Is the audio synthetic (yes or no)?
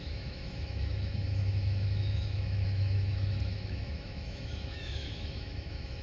yes